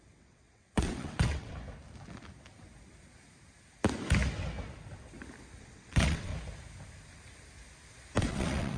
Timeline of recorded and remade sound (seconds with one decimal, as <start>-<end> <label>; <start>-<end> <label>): 0.0-1.5 remade; 1.5-5.6 recorded; 5.6-6.3 remade; 6.3-8.3 recorded; 8.3-8.8 remade